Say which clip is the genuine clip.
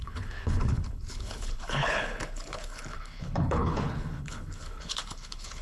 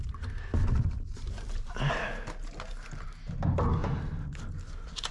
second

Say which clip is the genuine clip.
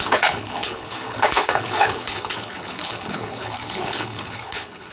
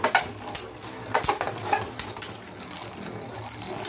second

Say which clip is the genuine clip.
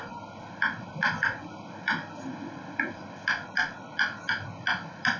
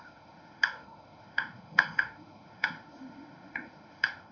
first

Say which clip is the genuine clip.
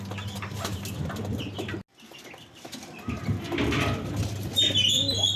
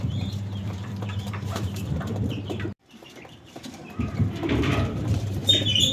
first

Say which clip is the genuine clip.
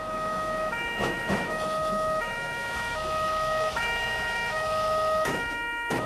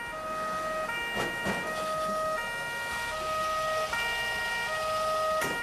second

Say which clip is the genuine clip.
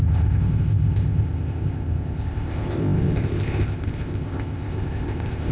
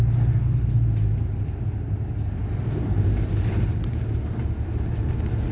second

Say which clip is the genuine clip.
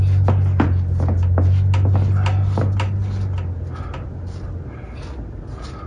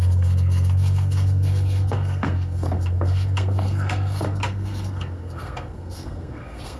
first